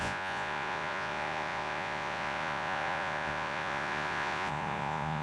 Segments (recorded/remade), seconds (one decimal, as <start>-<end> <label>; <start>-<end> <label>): 0.0-5.2 remade